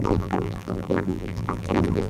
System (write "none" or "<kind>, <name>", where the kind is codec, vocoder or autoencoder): vocoder, BigVGAN v2